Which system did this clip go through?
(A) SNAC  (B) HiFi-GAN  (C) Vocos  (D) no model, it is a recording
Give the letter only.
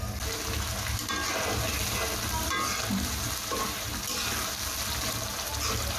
D